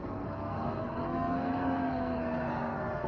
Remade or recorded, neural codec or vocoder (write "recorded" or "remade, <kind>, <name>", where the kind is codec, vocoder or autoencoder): remade, codec, SNAC